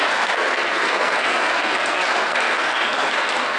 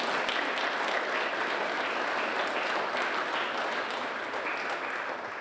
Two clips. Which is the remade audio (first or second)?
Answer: first